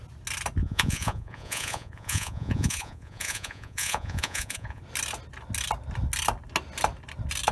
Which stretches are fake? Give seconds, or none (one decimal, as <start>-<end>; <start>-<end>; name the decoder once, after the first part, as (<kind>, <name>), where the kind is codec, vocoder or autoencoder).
0.6-4.8 (vocoder, Vocos)